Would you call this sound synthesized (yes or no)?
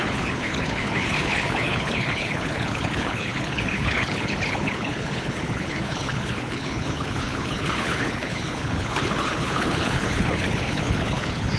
yes